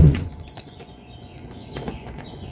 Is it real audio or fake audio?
fake